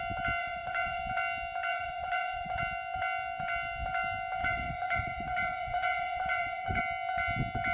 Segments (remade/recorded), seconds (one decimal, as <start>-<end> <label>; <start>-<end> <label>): 0.0-0.4 recorded; 0.4-1.0 remade; 1.0-1.7 recorded; 1.7-2.6 remade; 2.6-4.4 recorded; 4.4-6.8 remade; 6.8-7.7 recorded

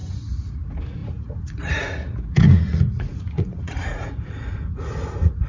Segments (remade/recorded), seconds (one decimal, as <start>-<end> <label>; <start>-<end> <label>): 0.0-5.5 remade

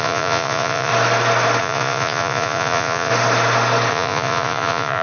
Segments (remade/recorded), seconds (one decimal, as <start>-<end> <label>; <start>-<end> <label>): 0.0-0.9 remade; 0.9-1.6 recorded; 1.6-3.1 remade; 3.1-3.9 recorded; 3.9-5.0 remade